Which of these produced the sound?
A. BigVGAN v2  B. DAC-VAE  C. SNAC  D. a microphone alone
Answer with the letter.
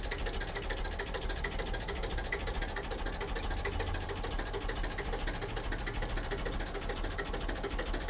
D